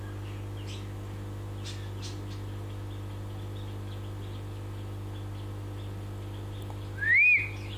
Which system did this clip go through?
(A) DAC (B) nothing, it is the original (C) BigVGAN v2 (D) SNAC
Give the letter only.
B